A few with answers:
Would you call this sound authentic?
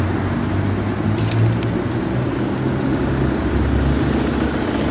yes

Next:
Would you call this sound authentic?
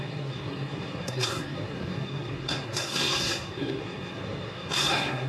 no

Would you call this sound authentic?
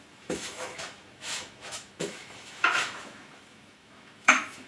no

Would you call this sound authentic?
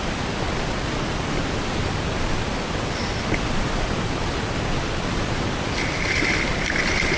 no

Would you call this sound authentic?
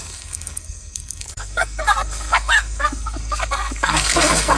no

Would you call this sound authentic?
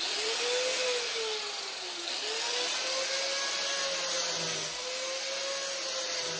yes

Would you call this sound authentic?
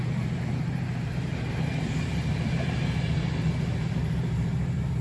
no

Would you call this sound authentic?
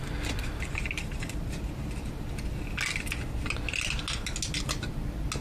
yes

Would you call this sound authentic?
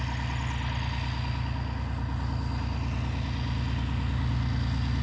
yes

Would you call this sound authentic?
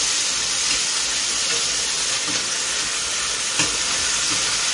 yes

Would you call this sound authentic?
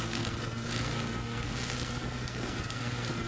no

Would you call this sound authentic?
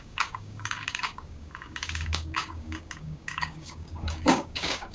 no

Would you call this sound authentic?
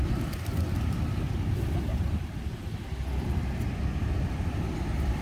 yes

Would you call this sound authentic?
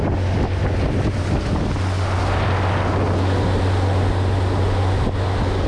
yes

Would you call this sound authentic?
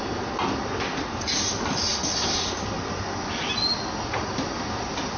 yes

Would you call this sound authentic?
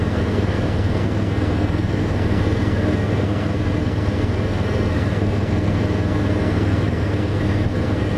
no